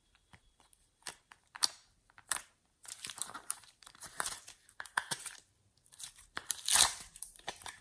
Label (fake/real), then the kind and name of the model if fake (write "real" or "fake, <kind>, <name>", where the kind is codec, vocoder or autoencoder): fake, vocoder, BigVGAN v2